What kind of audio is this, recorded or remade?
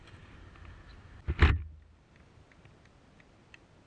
recorded